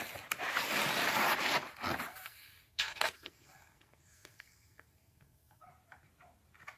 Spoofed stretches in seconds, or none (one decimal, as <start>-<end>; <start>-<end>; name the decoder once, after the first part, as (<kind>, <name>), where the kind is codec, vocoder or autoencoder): 2.1-5.7 (codec, SNAC)